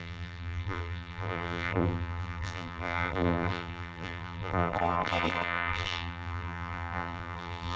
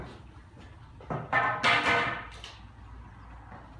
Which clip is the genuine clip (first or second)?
second